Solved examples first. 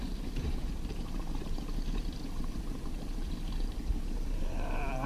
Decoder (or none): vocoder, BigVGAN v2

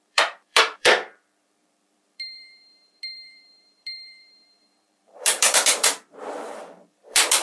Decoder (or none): vocoder, BigVGAN v2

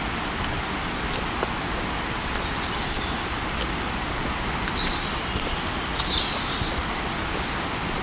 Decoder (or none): none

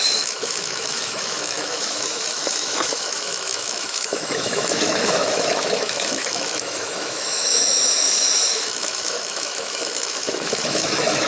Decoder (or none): autoencoder, DAC-VAE